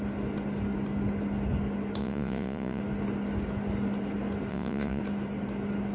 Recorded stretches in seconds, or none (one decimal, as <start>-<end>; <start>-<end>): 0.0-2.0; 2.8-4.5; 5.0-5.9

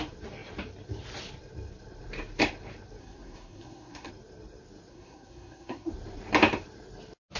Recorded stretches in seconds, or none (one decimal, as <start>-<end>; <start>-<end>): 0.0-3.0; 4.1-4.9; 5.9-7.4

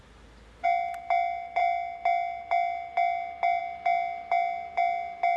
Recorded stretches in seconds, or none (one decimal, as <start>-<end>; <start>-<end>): 0.0-5.4

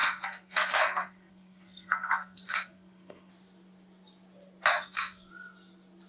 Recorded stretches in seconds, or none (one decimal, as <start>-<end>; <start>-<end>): 3.3-4.7; 5.3-6.1

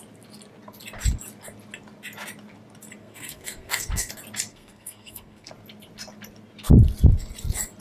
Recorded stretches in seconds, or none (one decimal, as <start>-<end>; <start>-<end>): 0.0-3.0; 4.1-4.5; 5.5-7.8